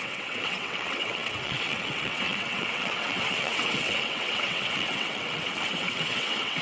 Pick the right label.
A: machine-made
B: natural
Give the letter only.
A